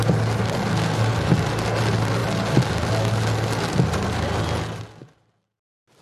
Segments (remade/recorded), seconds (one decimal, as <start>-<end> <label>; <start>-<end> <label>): 0.0-6.0 recorded